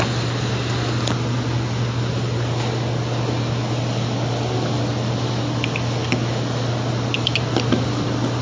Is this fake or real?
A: real